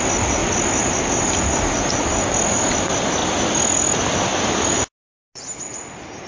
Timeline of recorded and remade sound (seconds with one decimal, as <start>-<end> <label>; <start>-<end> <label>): 0.0-6.3 recorded